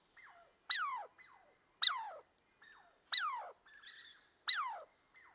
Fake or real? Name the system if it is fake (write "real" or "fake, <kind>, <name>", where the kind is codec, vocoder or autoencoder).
real